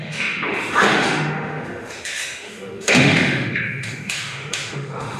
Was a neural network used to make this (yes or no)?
yes